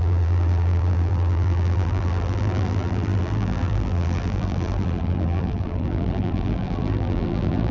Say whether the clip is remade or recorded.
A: remade